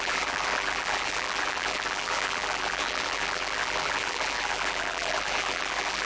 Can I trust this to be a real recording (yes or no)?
no